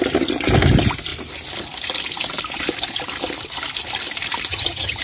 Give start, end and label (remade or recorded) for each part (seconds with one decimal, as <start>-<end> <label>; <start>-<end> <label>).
0.0-4.5 recorded; 4.5-5.0 remade